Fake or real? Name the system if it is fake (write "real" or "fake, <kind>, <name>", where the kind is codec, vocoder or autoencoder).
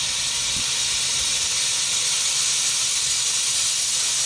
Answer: real